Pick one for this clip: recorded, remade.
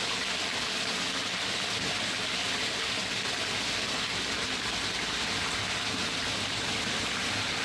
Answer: recorded